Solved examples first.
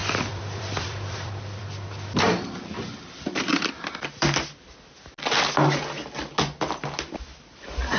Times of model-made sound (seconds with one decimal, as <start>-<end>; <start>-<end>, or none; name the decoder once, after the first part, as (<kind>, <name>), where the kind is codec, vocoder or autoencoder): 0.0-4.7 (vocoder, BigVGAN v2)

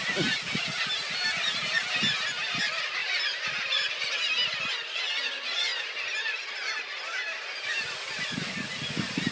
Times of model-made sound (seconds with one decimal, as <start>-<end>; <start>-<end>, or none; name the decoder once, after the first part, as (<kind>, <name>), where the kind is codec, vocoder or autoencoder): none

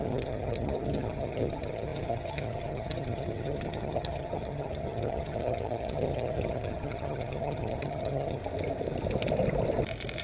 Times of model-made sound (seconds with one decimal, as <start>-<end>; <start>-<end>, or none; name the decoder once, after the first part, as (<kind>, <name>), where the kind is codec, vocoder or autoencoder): 0.0-8.4 (vocoder, HiFi-GAN)

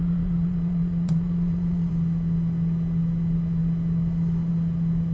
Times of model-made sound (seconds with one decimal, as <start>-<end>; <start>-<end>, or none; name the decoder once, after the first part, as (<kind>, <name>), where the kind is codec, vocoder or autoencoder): 0.0-1.9 (vocoder, Vocos)